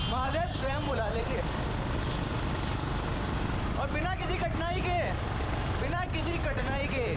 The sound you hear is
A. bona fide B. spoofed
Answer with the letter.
A